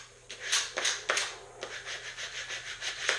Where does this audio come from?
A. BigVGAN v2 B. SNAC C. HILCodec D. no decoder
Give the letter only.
D